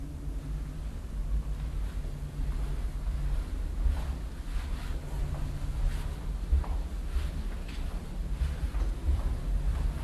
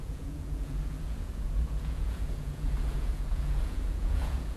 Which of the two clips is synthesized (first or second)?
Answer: second